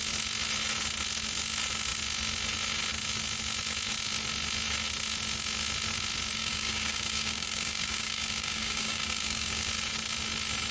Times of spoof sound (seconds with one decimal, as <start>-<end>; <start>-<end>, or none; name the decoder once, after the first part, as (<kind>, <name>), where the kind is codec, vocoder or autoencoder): 6.4-9.7 (codec, DAC)